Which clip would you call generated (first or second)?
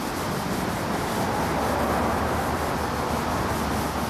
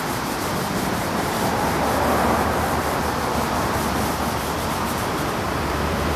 second